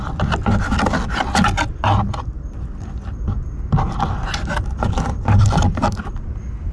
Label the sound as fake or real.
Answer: real